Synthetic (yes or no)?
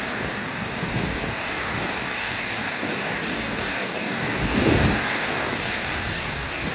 yes